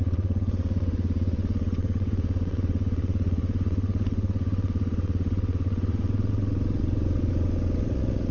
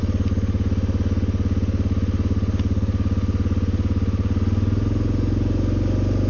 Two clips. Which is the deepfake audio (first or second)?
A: first